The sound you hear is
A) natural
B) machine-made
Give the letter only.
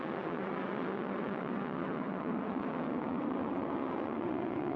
B